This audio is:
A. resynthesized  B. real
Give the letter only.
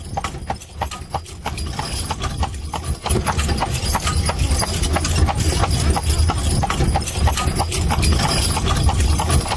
B